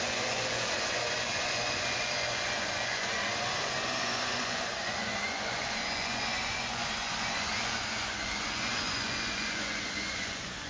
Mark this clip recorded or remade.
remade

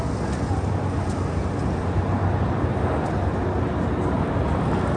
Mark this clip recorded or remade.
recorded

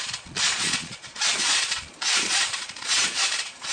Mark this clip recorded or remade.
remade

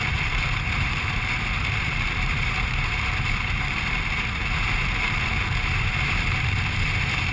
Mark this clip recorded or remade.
remade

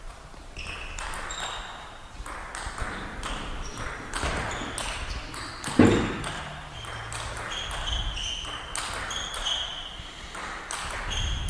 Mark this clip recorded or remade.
recorded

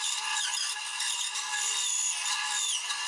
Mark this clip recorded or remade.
recorded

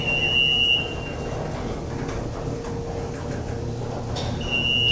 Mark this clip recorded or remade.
recorded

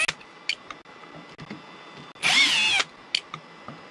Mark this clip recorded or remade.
recorded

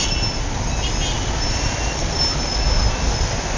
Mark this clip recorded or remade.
recorded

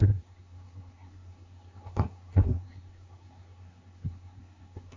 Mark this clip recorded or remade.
remade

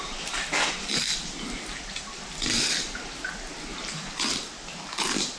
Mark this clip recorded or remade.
recorded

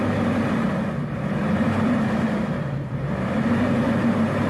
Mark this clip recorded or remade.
recorded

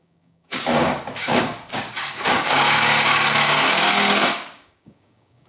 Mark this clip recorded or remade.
remade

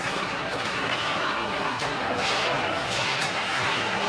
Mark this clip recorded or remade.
remade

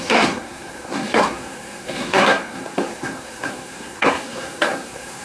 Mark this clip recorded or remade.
remade